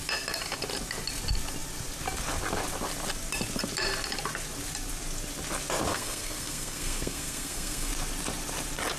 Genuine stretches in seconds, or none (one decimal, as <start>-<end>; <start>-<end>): 0.0-5.9; 7.9-9.0

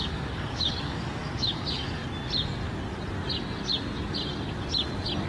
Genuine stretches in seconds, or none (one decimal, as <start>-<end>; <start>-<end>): 2.0-5.3